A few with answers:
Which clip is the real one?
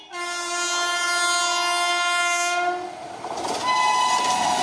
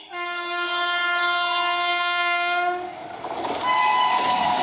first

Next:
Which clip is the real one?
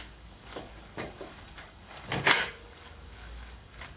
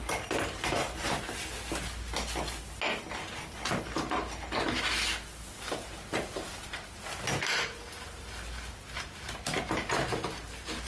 second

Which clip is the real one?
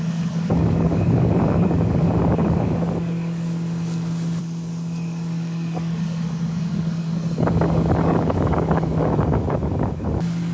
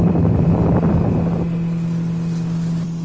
second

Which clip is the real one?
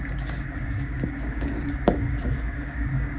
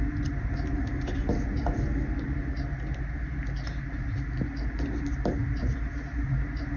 second